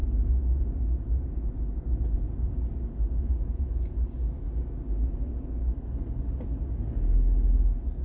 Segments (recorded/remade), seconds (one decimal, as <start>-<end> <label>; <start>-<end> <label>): 0.0-3.6 remade; 3.6-8.0 recorded

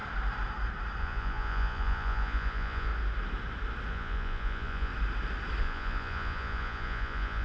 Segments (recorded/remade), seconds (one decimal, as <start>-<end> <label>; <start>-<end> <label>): 0.0-1.0 recorded; 1.0-2.9 remade; 2.9-3.9 recorded; 3.9-4.9 remade; 4.9-5.6 recorded; 5.6-7.4 remade

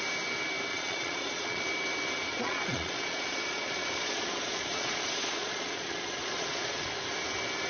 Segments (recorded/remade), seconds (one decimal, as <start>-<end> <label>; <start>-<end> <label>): 0.0-0.7 recorded; 0.7-1.6 remade; 1.6-2.3 recorded; 2.3-6.9 remade; 6.9-7.7 recorded

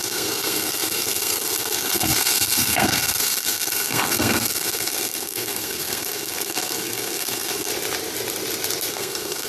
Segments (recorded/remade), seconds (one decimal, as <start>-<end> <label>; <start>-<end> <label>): 0.0-7.7 remade; 7.7-8.9 recorded; 8.9-9.5 remade

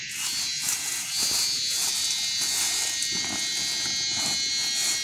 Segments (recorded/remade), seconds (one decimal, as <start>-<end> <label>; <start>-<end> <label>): 0.0-5.0 recorded

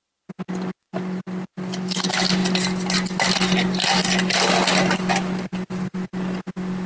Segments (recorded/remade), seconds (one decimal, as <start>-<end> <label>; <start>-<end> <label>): 0.0-6.9 recorded

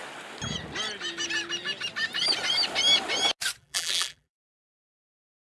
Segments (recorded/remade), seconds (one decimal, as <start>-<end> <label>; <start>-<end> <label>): 0.0-3.6 recorded; 3.6-4.5 remade; 4.5-5.5 recorded